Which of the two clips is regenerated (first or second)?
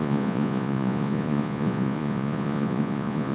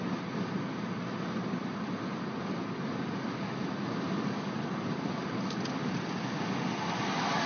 first